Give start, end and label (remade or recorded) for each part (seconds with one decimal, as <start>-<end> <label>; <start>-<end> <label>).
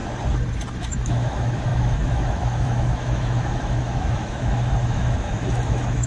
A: 0.0-0.8 recorded; 0.8-6.1 remade